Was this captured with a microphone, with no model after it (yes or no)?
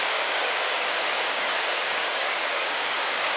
no